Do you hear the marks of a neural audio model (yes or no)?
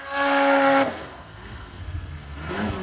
yes